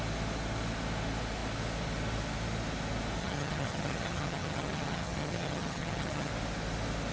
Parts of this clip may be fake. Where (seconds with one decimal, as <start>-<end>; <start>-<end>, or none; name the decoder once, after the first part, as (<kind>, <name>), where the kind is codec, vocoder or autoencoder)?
3.2-6.3 (vocoder, HiFi-GAN)